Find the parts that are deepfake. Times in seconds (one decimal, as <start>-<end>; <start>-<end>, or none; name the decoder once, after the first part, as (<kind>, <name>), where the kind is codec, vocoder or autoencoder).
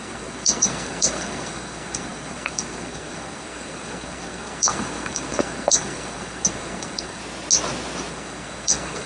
0.0-7.2 (codec, SNAC); 8.1-9.1